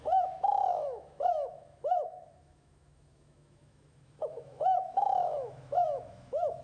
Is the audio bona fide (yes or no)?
no